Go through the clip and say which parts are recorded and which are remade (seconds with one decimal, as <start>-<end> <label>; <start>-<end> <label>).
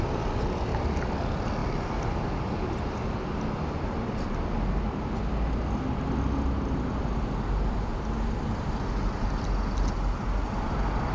0.0-11.1 recorded